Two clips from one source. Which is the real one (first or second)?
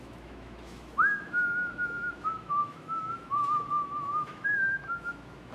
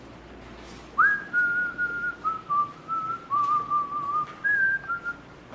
second